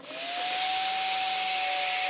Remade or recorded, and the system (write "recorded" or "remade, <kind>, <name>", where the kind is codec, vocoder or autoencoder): recorded